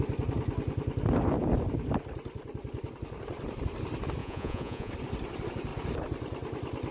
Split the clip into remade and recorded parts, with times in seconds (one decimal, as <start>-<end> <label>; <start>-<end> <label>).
0.0-4.2 recorded; 4.2-4.9 remade; 4.9-6.9 recorded